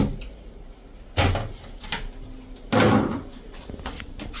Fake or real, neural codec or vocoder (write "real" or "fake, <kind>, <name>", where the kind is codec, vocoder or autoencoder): real